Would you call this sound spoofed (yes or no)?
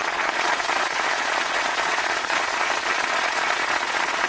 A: yes